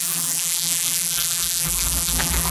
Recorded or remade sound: remade